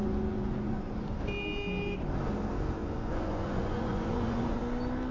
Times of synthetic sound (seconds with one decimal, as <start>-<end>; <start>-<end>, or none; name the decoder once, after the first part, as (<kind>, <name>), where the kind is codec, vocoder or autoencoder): 0.0-1.2 (vocoder, Vocos); 2.8-4.6